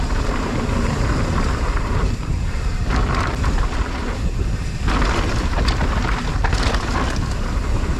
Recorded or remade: recorded